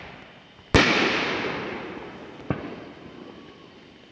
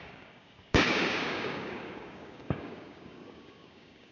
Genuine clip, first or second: first